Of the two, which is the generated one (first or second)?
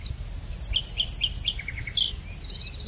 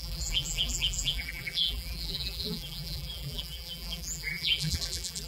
second